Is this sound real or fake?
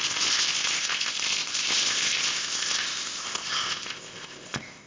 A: fake